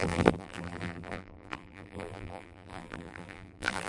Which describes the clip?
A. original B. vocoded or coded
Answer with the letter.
B